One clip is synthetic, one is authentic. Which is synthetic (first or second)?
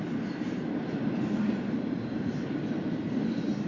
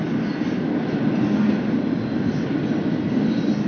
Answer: first